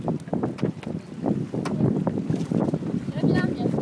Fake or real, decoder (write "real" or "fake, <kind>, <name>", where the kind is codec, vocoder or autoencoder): real